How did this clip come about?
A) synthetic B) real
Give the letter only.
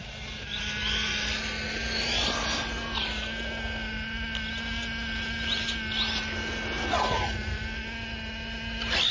B